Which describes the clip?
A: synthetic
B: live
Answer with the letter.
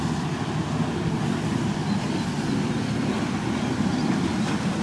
B